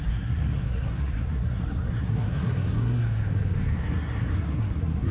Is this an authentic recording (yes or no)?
no